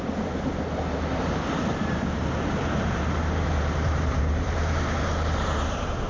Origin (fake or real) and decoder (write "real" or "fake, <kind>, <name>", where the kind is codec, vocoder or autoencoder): fake, vocoder, BigVGAN v2